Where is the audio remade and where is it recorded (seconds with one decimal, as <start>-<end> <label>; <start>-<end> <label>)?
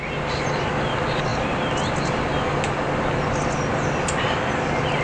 0.0-5.0 recorded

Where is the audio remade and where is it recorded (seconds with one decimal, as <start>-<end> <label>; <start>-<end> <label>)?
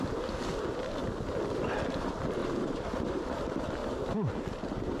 0.0-2.4 recorded; 2.4-3.3 remade; 3.3-3.8 recorded; 3.8-4.3 remade; 4.3-5.0 recorded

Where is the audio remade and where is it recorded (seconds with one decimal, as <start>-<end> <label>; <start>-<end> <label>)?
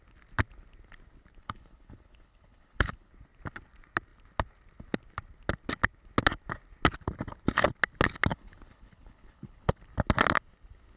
0.0-1.4 recorded; 1.4-3.1 remade; 3.1-8.3 recorded; 8.3-9.8 remade; 9.8-11.0 recorded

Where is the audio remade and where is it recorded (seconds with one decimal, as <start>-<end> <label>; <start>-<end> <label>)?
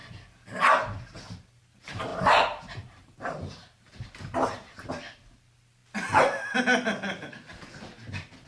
0.0-2.1 recorded; 2.1-4.9 remade; 4.9-8.5 recorded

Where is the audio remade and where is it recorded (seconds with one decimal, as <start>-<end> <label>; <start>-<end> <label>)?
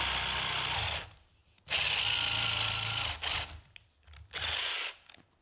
0.0-5.4 recorded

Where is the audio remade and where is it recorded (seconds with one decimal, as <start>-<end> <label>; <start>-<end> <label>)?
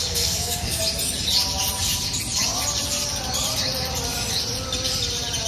0.0-0.8 remade; 0.8-5.5 recorded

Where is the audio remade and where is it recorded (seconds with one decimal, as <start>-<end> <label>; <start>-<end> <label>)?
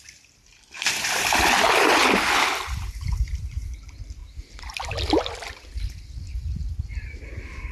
0.0-2.0 remade; 2.0-2.7 recorded; 2.7-4.2 remade; 4.2-4.9 recorded; 4.9-7.7 remade